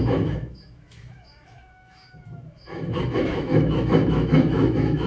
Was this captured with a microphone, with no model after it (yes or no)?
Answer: no